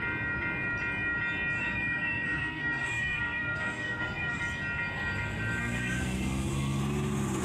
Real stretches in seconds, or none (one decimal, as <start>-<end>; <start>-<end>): 0.0-1.6; 4.4-5.6; 6.8-7.4